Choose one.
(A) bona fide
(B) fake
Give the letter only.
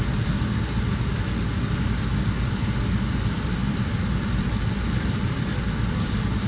A